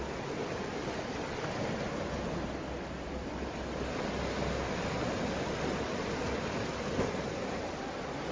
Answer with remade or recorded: recorded